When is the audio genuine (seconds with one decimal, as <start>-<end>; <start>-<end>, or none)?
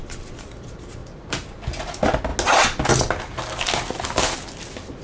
0.0-1.0; 1.5-5.0